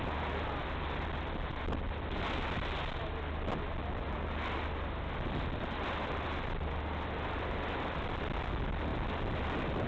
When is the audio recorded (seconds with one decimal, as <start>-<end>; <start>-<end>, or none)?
0.0-9.9